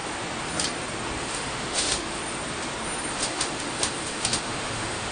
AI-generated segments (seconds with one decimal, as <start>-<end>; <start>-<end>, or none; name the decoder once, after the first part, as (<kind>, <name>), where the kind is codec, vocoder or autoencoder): 1.2-2.2 (autoencoder, DAC-VAE); 3.1-5.1